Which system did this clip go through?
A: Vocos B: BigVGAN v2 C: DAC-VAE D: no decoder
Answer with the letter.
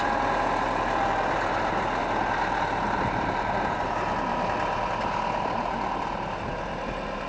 D